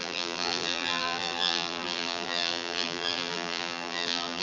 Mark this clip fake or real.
fake